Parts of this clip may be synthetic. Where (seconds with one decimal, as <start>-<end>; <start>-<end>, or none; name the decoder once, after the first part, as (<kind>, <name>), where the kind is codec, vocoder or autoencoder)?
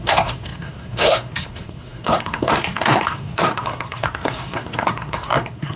0.0-5.8 (codec, SNAC)